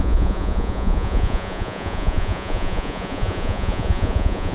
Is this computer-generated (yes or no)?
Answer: yes